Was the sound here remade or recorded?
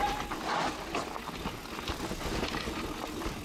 recorded